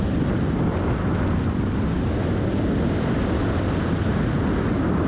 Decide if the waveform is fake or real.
real